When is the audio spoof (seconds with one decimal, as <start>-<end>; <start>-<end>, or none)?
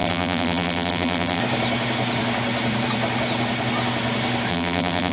0.0-1.4; 4.5-5.1